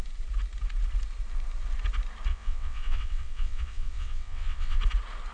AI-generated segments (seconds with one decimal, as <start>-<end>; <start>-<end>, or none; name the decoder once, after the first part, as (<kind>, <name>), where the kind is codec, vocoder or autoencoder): 2.3-4.8 (vocoder, WaveNeXt)